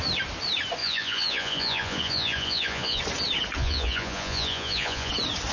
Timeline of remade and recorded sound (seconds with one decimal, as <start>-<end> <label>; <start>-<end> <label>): 0.0-0.8 recorded; 0.8-3.0 remade; 3.0-3.6 recorded; 3.6-5.1 remade; 5.1-5.5 recorded